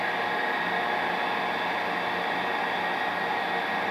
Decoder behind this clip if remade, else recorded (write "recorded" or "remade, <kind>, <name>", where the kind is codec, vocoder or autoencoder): recorded